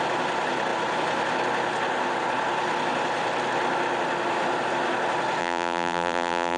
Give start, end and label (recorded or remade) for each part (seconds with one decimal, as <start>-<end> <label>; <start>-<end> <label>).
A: 0.0-5.4 recorded; 5.4-6.6 remade